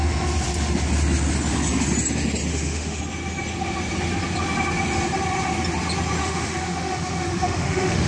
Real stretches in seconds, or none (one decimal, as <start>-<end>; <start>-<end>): 0.0-2.5; 3.0-6.2